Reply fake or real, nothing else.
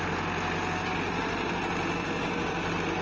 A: real